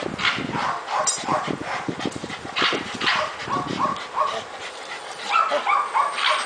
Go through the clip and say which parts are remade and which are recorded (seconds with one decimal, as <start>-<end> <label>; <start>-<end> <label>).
0.0-1.3 recorded; 1.3-3.3 remade; 3.3-6.5 recorded